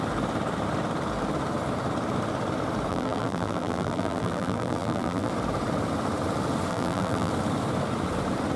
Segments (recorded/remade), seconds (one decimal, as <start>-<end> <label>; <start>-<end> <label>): 0.0-2.9 recorded; 2.9-5.3 remade; 5.3-6.7 recorded; 6.7-7.3 remade; 7.3-8.6 recorded